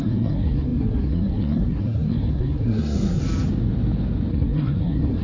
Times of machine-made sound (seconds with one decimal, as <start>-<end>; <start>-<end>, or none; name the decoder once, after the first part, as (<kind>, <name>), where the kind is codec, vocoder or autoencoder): 0.0-3.2 (codec, SNAC); 4.3-5.2